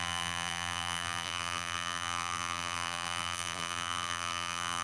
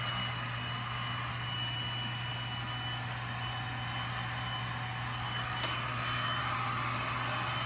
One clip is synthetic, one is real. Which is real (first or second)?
second